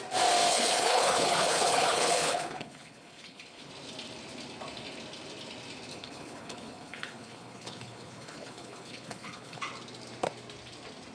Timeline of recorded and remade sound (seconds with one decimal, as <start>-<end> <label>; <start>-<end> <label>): 0.0-0.5 recorded; 0.5-3.7 remade; 3.7-5.9 recorded; 5.9-9.6 remade; 9.6-11.1 recorded